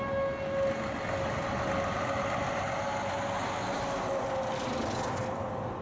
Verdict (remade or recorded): recorded